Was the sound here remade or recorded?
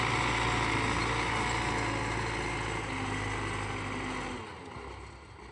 recorded